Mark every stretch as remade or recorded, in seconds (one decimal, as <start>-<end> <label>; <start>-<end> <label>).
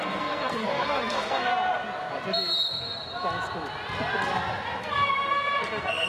0.0-1.5 remade; 1.5-4.8 recorded; 4.8-6.1 remade